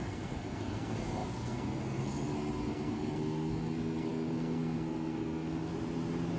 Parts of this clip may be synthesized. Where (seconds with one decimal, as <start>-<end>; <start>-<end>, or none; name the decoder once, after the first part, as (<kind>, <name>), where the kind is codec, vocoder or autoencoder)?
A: 0.0-5.7 (codec, SNAC)